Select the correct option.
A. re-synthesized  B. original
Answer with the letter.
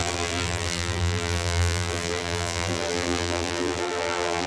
A